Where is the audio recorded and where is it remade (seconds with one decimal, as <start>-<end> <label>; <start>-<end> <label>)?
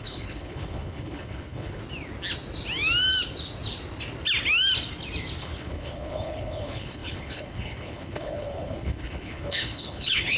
0.0-1.8 remade; 1.8-5.4 recorded; 5.4-10.4 remade